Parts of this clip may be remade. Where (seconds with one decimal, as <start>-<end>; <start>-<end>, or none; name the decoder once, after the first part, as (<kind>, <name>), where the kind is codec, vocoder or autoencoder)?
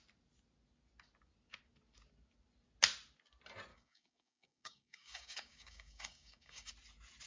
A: 3.7-6.7 (codec, DAC)